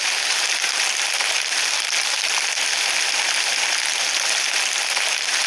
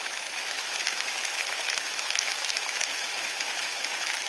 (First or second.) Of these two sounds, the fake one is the second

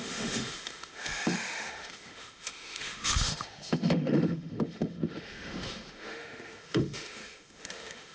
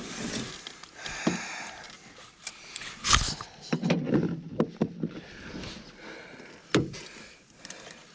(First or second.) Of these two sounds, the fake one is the first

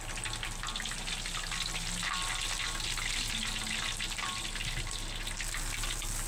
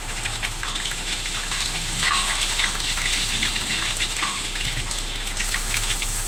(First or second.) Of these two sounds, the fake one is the second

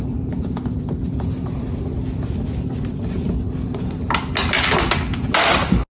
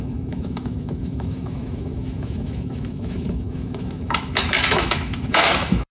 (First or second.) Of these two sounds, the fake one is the second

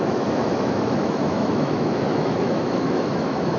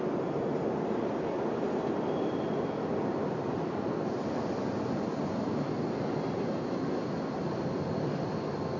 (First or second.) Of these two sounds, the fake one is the first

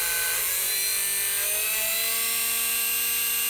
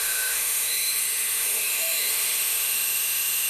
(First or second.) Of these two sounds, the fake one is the second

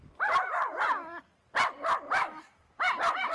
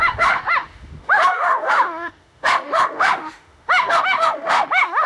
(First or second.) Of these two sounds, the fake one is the second